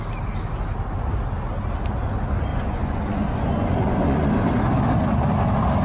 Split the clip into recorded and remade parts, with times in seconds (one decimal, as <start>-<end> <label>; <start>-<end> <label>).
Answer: 0.0-2.5 recorded; 2.5-4.3 remade; 4.3-5.8 recorded